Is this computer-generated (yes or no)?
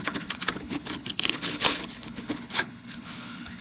yes